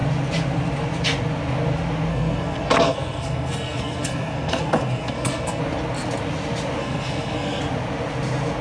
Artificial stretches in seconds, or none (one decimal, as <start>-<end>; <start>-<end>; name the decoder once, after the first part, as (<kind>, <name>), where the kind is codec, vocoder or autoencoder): 2.1-5.6 (codec, SNAC); 6.8-7.6